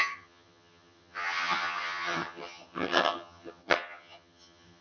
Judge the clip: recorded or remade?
remade